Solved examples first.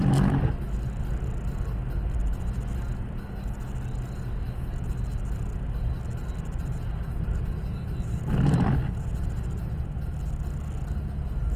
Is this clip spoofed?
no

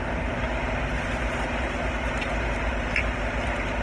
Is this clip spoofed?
no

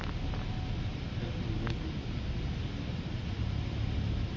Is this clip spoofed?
no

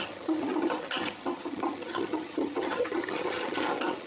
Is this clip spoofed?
yes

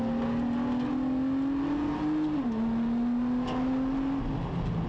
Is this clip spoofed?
no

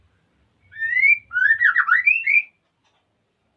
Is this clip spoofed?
no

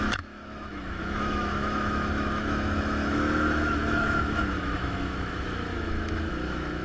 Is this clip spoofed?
yes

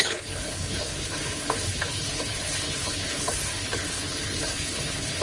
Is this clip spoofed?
yes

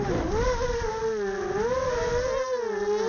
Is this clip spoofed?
no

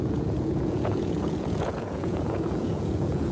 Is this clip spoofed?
yes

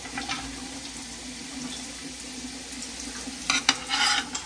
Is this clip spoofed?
no